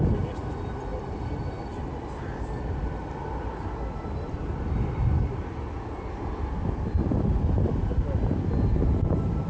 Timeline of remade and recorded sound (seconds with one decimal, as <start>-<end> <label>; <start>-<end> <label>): 0.0-0.9 recorded; 0.9-5.4 remade; 5.4-6.6 recorded; 6.6-7.9 remade; 7.9-9.5 recorded